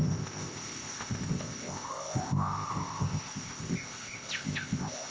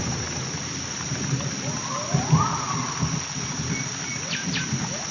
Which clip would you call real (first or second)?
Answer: second